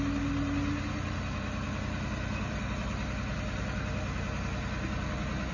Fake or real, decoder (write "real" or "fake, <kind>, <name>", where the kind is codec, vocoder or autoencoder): real